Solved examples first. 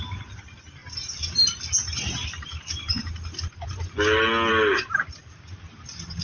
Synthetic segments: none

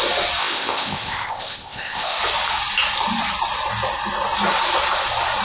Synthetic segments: 0.4-2.2 (codec, ZipCodec)

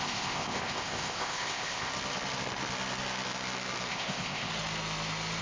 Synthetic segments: 0.0-1.9 (codec, ZipCodec); 3.9-4.5

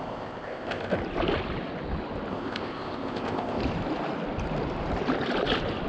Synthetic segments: 0.0-1.0 (codec, ZipCodec); 2.3-3.6

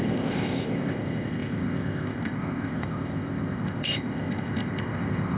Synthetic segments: 0.0-5.4 (codec, ZipCodec)

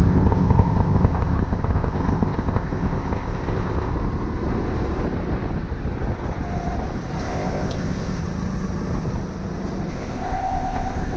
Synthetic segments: 0.0-3.9 (codec, ZipCodec); 7.2-8.2; 9.9-11.2

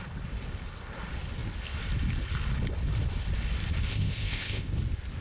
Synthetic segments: 3.9-4.7 (codec, ZipCodec)

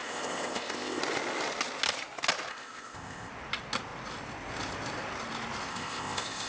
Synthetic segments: 0.0-1.0 (codec, ZipCodec); 2.5-3.3; 5.7-6.5